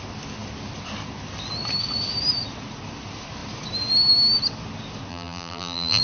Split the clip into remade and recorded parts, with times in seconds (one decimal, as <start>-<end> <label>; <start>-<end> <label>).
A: 0.0-5.1 recorded; 5.1-6.0 remade